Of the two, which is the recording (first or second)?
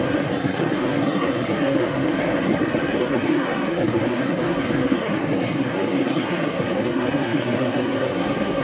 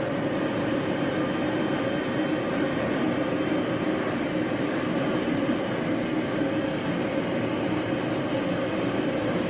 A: second